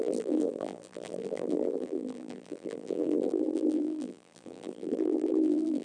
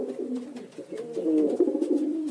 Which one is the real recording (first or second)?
second